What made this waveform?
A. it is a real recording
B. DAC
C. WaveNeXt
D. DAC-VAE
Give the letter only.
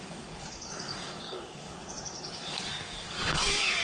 B